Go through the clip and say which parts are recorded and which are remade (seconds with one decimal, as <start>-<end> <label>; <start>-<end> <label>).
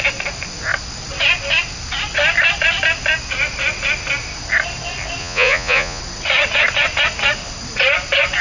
0.0-5.2 recorded; 5.2-6.0 remade; 6.0-8.4 recorded